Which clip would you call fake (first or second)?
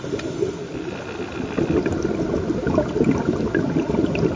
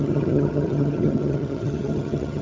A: second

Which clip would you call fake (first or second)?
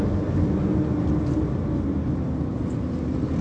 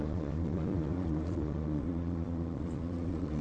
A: second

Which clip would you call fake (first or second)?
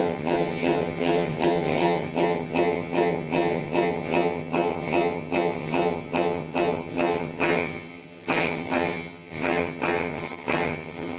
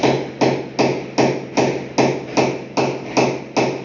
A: first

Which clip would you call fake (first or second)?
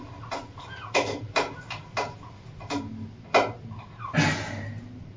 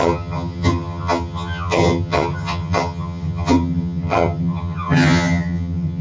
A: second